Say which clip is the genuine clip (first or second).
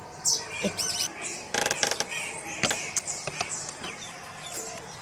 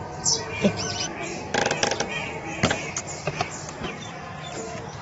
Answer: second